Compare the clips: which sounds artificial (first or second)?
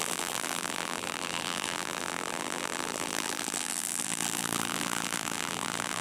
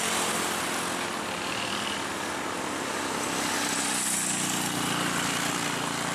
first